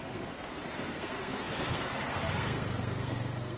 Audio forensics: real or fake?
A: fake